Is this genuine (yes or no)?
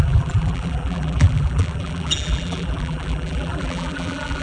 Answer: no